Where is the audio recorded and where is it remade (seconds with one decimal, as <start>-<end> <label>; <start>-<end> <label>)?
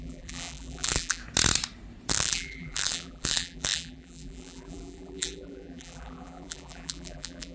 0.0-1.2 remade; 1.2-2.1 recorded; 2.1-7.5 remade